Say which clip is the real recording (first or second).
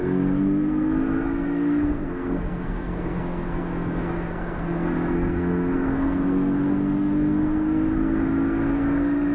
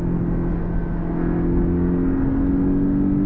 second